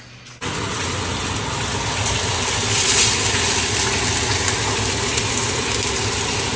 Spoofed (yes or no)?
no